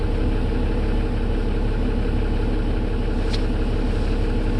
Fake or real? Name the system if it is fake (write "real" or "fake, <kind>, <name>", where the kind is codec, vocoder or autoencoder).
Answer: real